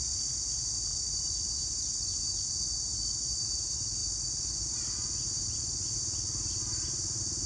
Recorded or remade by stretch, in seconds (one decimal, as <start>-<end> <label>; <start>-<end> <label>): 0.0-0.9 recorded; 0.9-2.2 remade; 2.2-4.0 recorded; 4.0-7.5 remade